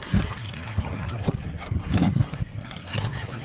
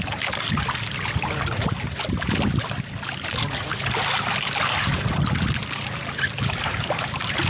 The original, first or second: second